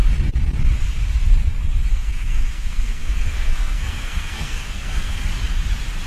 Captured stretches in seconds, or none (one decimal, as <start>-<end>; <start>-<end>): 0.0-1.9; 5.2-6.1

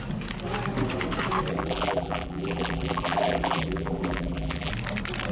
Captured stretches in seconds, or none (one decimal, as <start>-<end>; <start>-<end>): 0.0-1.5; 4.7-5.3